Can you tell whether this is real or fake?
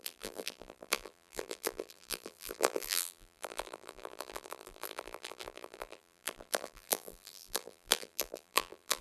fake